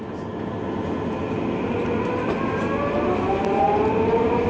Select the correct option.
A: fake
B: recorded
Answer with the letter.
B